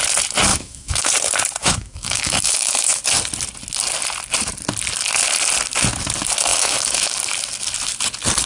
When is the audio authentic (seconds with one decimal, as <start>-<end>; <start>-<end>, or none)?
0.0-0.5; 1.1-1.6; 3.0-6.5; 7.1-8.5